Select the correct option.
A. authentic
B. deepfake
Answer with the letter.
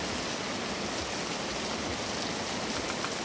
A